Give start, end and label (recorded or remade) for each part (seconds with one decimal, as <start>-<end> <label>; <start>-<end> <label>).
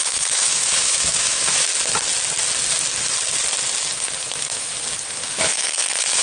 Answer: 0.0-1.7 remade; 1.7-4.2 recorded; 4.2-4.7 remade; 4.7-5.3 recorded; 5.3-6.2 remade